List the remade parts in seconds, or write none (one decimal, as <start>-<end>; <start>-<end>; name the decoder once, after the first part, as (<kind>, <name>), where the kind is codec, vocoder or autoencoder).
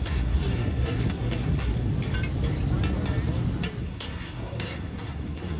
0.0-1.9 (codec, SNAC); 3.8-5.6